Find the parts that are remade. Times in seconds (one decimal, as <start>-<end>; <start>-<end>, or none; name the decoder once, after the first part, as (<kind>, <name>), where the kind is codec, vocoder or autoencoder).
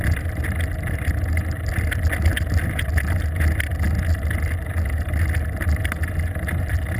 none